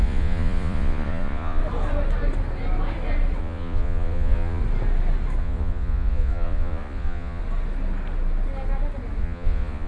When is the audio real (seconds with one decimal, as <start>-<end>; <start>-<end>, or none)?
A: 1.6-3.4; 4.6-5.4; 7.4-9.2